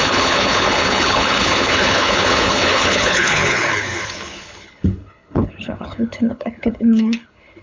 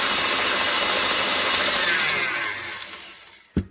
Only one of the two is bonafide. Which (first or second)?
second